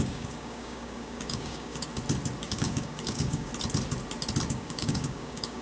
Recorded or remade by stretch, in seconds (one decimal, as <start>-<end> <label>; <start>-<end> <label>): 0.0-1.9 remade; 1.9-2.4 recorded; 2.4-3.5 remade; 3.5-4.5 recorded; 4.5-5.6 remade